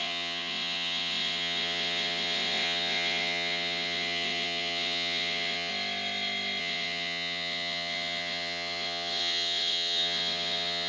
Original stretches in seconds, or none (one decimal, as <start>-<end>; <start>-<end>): 5.7-6.6